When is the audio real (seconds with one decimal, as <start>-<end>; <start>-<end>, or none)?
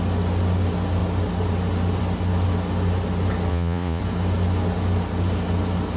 0.0-3.5; 4.0-6.0